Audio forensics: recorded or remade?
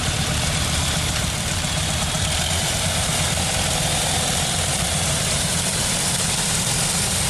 remade